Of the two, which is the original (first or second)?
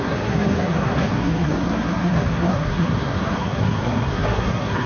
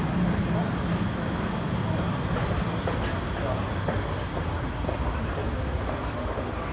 second